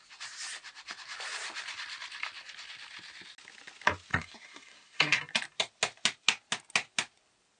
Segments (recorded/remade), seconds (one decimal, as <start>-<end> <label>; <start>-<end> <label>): 0.0-4.1 recorded; 4.1-5.2 remade; 5.2-7.6 recorded